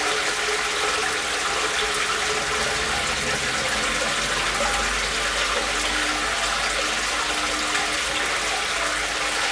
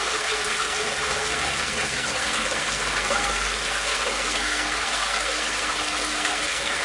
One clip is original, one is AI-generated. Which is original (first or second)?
first